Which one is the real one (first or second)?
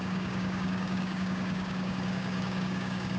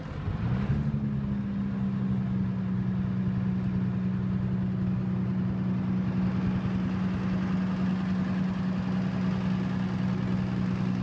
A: second